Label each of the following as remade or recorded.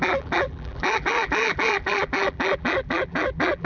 remade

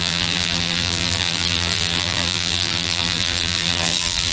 remade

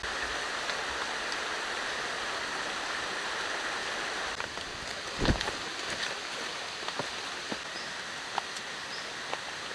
recorded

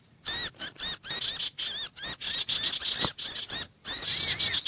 recorded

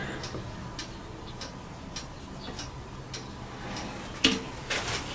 recorded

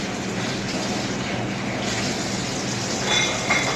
recorded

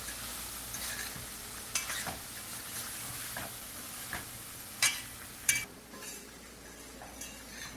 recorded